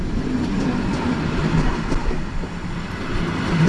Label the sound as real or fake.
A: fake